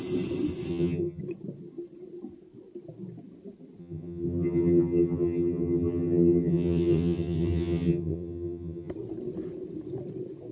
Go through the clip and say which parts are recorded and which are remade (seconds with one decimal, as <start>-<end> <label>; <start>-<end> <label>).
0.0-0.7 recorded; 0.7-1.2 remade; 1.2-3.8 recorded; 3.8-8.9 remade; 8.9-10.5 recorded